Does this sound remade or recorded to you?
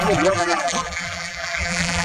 remade